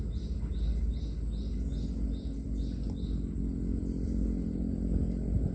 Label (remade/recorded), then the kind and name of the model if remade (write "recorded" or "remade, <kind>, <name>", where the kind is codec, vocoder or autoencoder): recorded